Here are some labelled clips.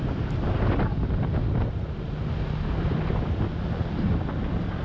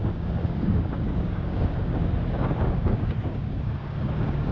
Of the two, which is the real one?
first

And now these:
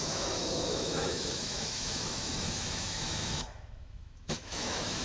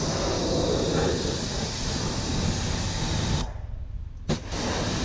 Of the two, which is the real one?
second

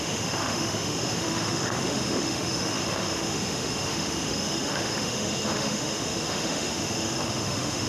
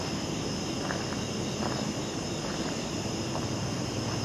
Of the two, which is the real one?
second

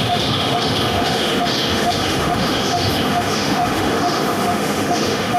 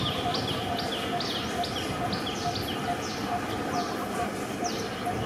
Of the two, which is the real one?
second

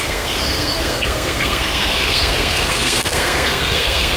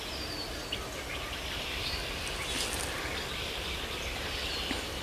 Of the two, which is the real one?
second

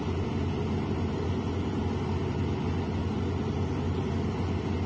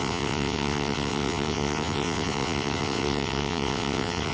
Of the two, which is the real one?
first